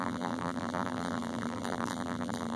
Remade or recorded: remade